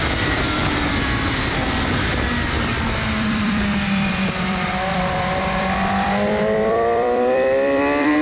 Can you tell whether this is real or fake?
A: fake